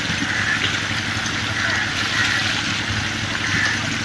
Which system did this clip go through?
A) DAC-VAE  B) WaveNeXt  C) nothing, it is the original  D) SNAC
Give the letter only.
C